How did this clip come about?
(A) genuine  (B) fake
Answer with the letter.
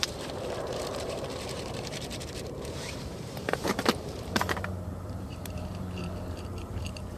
B